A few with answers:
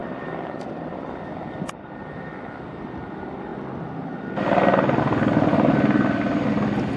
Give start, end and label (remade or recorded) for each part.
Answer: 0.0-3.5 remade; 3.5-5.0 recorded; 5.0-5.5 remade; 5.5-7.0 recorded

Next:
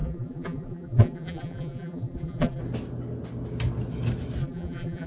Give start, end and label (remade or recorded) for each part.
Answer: 0.0-2.6 remade; 2.6-4.4 recorded; 4.4-5.1 remade

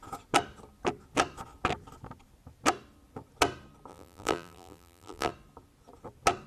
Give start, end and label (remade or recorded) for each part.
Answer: 0.0-3.9 recorded; 3.9-5.3 remade; 5.3-6.5 recorded

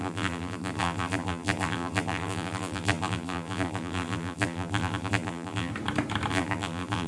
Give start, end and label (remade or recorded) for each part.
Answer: 0.0-5.7 remade; 5.7-6.3 recorded; 6.3-7.1 remade

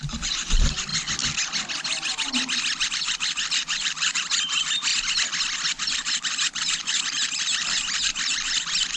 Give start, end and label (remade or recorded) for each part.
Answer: 0.0-0.9 remade; 0.9-2.9 recorded; 2.9-4.9 remade; 4.9-5.8 recorded; 5.8-9.0 remade

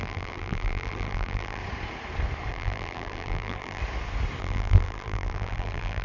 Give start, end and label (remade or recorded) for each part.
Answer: 0.0-1.6 remade; 1.6-2.5 recorded; 2.5-3.8 remade; 3.8-4.4 recorded; 4.4-6.0 remade

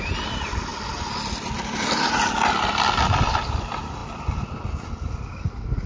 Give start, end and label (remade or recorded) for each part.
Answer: 0.0-4.0 remade; 4.0-4.6 recorded; 4.6-5.9 remade

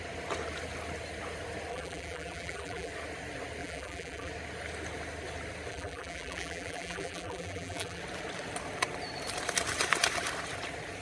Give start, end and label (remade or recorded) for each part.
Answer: 0.0-1.7 recorded; 1.7-2.9 remade; 2.9-3.6 recorded; 3.6-4.3 remade; 4.3-5.7 recorded; 5.7-8.0 remade; 8.0-11.0 recorded